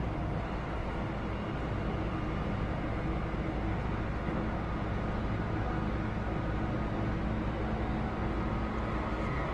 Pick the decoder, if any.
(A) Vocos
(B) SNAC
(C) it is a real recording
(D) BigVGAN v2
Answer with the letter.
C